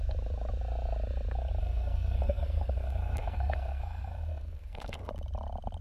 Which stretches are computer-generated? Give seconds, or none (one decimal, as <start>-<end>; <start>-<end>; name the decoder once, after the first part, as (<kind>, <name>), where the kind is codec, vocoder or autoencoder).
1.6-5.1 (codec, SNAC)